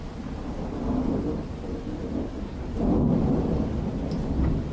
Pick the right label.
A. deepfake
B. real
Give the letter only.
B